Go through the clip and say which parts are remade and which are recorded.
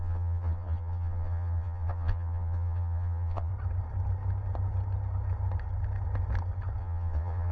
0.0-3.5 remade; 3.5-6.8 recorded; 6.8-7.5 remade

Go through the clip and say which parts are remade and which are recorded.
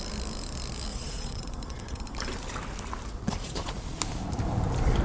0.0-0.9 recorded; 0.9-2.0 remade; 2.0-3.1 recorded; 3.1-4.0 remade; 4.0-5.0 recorded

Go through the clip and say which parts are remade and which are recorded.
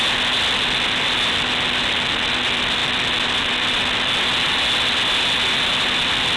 0.0-6.4 recorded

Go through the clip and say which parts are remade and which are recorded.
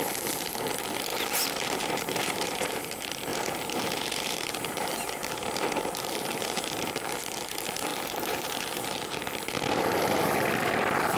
0.0-1.1 recorded; 1.1-2.8 remade; 2.8-3.3 recorded; 3.3-6.9 remade; 6.9-7.9 recorded; 7.9-9.2 remade; 9.2-11.2 recorded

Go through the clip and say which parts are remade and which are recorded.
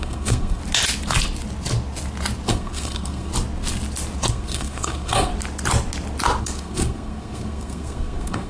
0.0-0.6 remade; 0.6-2.5 recorded; 2.5-3.3 remade; 3.3-4.3 recorded; 4.3-5.3 remade; 5.3-6.4 recorded; 6.4-8.5 remade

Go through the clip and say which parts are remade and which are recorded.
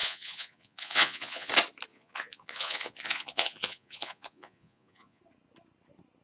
0.0-1.5 remade; 1.5-1.9 recorded; 1.9-5.2 remade; 5.2-6.2 recorded